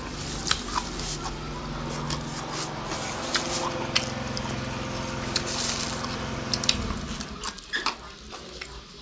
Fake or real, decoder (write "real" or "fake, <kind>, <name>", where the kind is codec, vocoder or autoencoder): real